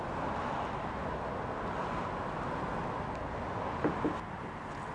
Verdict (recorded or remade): recorded